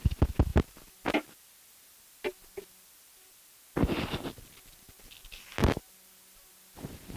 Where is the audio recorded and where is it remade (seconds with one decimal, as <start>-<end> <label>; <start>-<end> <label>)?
0.0-7.2 recorded